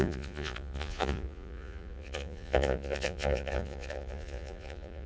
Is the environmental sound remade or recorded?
remade